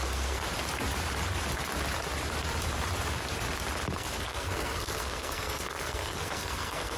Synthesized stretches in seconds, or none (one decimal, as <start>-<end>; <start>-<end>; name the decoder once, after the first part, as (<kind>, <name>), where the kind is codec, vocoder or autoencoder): 0.0-0.4 (codec, SNAC); 3.9-7.0

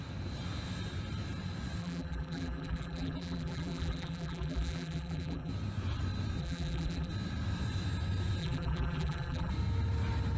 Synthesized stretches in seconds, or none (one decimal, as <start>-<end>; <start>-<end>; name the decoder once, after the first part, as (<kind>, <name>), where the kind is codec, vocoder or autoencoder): 1.8-5.5 (vocoder, BigVGAN v2); 6.4-7.1; 8.4-9.5

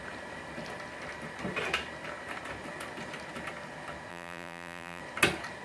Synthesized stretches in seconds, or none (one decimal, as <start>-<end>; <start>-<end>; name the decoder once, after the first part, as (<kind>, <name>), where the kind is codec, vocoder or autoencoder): 4.1-5.0 (vocoder, BigVGAN v2)